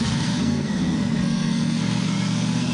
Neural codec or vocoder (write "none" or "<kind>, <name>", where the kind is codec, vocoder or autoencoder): codec, SNAC